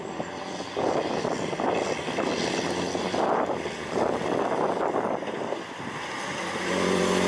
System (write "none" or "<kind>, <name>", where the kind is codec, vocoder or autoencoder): vocoder, BigVGAN v2